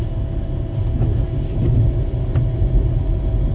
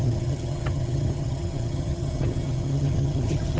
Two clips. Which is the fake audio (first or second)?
second